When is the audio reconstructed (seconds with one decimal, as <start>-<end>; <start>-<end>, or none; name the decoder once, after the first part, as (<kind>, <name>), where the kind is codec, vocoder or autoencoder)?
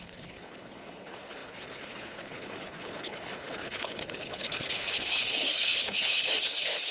0.0-6.9 (codec, HILCodec)